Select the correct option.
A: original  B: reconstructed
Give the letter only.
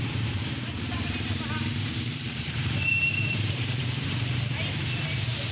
B